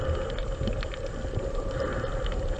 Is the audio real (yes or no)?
yes